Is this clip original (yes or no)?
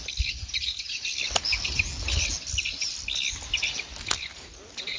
yes